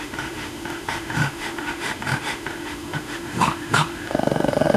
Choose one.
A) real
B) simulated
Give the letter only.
B